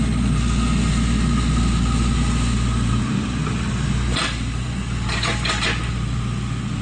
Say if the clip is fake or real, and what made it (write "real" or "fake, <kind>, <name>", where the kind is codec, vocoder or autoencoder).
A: real